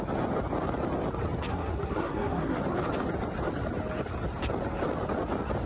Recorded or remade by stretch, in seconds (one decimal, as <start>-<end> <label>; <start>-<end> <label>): 0.0-1.5 recorded; 1.5-2.6 remade; 2.6-5.7 recorded